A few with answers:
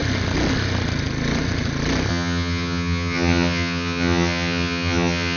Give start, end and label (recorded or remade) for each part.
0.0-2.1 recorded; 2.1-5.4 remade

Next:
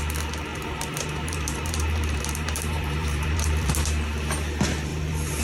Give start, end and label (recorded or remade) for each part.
0.0-0.5 recorded; 0.5-3.7 remade; 3.7-4.9 recorded; 4.9-5.4 remade

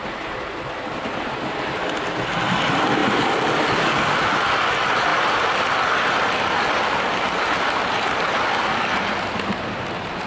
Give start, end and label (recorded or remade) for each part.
0.0-10.3 recorded

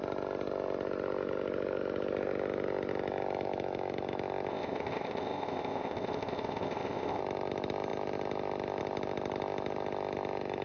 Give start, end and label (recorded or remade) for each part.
0.0-4.5 recorded; 4.5-7.2 remade; 7.2-10.6 recorded

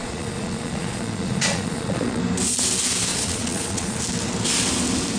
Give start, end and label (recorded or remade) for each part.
0.0-2.2 remade; 2.2-3.1 recorded; 3.1-4.0 remade; 4.0-5.2 recorded

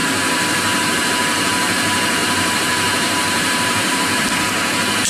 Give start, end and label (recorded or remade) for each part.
0.0-1.1 remade; 1.1-2.2 recorded; 2.2-4.2 remade; 4.2-5.1 recorded

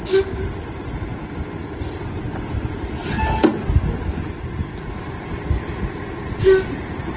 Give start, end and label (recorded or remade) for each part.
0.0-7.2 recorded